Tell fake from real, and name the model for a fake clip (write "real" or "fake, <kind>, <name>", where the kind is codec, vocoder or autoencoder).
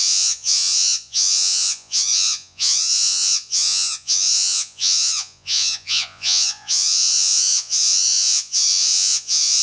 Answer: fake, vocoder, Vocos